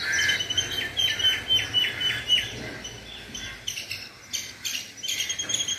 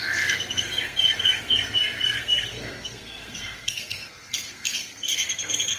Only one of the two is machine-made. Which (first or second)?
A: second